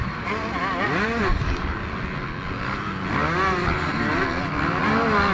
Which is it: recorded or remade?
recorded